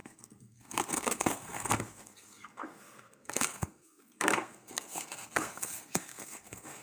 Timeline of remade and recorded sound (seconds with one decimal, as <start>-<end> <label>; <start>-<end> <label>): 0.0-6.8 remade